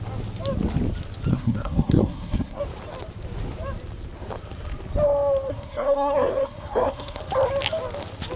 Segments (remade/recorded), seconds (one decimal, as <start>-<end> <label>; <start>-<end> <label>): 0.0-1.3 recorded; 1.3-2.6 remade; 2.6-5.5 recorded; 5.5-7.2 remade; 7.2-8.4 recorded